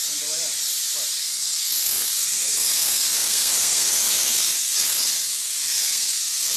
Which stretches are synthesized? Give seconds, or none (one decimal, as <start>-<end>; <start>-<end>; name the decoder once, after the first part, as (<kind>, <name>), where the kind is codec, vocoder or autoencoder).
1.2-6.6 (codec, SNAC)